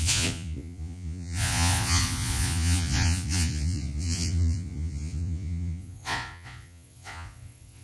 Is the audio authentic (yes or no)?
no